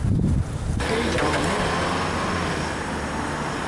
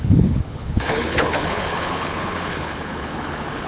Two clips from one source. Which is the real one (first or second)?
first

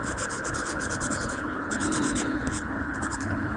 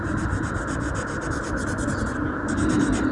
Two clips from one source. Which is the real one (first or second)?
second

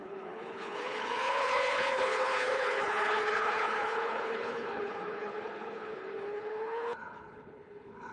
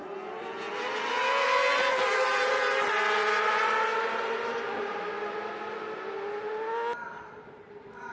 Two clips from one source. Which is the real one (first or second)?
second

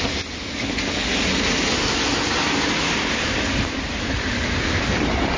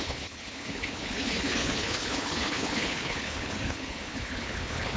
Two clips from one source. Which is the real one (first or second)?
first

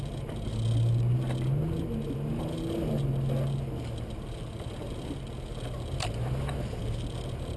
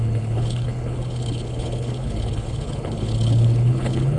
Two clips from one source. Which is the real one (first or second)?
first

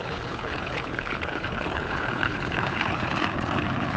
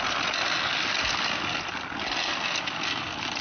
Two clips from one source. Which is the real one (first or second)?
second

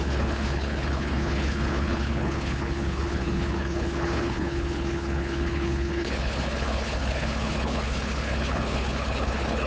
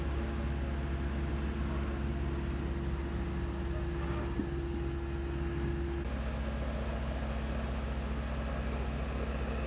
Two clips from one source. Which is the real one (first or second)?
second